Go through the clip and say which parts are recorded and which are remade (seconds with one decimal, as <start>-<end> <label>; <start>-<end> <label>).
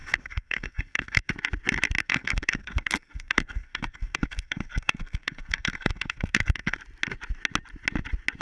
0.0-1.3 remade; 1.3-2.0 recorded; 2.0-6.8 remade; 6.8-8.4 recorded